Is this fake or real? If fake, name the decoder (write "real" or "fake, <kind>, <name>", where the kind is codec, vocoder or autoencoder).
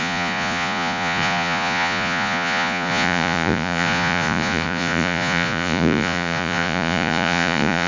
fake, vocoder, Vocos